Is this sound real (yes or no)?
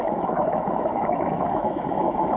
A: no